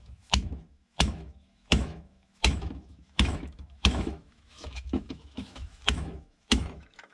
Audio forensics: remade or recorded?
remade